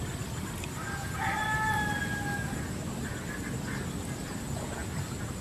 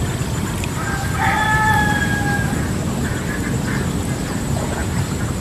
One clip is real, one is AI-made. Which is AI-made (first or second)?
second